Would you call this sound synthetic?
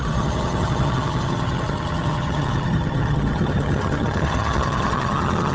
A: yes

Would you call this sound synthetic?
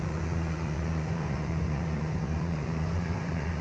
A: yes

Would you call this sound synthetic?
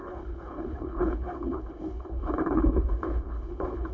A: yes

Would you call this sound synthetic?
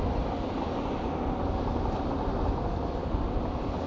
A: no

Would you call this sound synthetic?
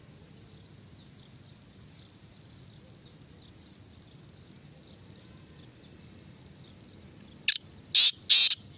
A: no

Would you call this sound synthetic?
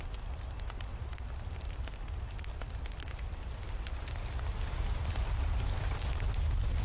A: no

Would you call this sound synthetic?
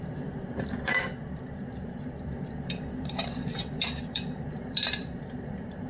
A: yes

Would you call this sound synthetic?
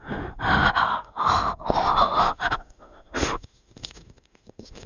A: yes